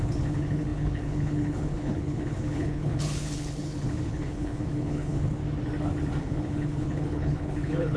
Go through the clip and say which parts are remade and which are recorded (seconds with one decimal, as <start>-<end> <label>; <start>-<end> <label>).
0.0-5.4 remade; 5.4-6.2 recorded; 6.2-8.0 remade

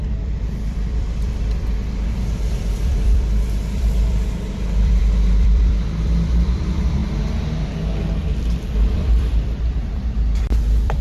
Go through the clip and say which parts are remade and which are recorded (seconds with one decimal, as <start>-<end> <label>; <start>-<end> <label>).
0.0-7.0 remade; 7.0-8.4 recorded; 8.4-11.0 remade

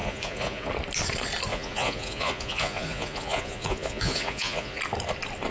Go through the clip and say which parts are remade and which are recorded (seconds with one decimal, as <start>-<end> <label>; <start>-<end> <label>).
0.0-0.7 remade; 0.7-1.5 recorded; 1.5-4.8 remade; 4.8-5.5 recorded

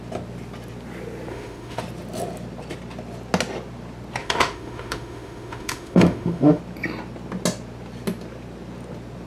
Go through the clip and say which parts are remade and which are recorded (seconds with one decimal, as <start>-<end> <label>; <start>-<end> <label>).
0.0-1.3 recorded; 1.3-1.8 remade; 1.8-4.2 recorded; 4.2-6.6 remade; 6.6-9.3 recorded

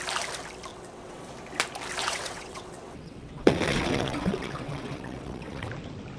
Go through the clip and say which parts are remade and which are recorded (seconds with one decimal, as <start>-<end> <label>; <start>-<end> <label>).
0.0-0.7 recorded; 0.7-1.3 remade; 1.3-2.0 recorded; 2.0-5.7 remade; 5.7-6.2 recorded

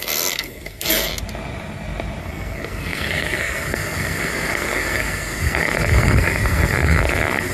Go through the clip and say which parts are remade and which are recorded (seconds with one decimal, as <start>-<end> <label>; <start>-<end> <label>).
0.0-1.1 remade; 1.1-2.2 recorded; 2.2-7.5 remade

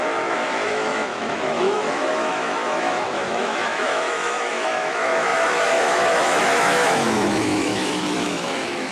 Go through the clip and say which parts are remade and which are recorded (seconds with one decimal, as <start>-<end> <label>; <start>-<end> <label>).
0.0-8.9 remade

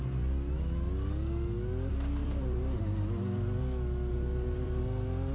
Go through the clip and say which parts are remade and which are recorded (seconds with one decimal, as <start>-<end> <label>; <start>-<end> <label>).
0.0-2.2 recorded; 2.2-2.8 remade; 2.8-4.1 recorded; 4.1-4.8 remade; 4.8-5.3 recorded